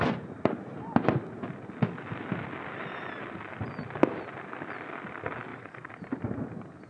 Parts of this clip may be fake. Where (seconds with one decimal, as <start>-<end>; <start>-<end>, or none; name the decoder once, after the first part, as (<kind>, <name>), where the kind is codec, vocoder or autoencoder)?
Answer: 5.5-6.2 (vocoder, BigVGAN v2)